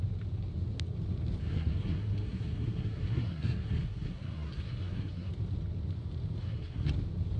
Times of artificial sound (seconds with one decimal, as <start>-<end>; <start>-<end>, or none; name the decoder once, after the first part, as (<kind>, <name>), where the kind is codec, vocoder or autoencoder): 1.4-5.3 (codec, SNAC); 6.4-6.9